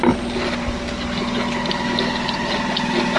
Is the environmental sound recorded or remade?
recorded